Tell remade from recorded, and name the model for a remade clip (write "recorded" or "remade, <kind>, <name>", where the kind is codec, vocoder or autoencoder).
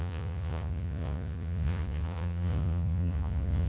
remade, vocoder, Vocos